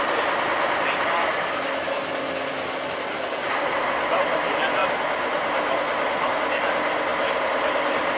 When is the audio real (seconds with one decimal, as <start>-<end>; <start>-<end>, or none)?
0.0-8.2